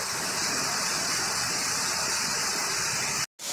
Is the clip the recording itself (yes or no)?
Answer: yes